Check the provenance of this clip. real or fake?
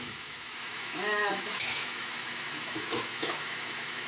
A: fake